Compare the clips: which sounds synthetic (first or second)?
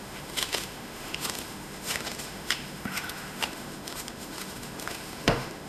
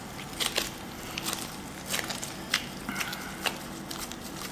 first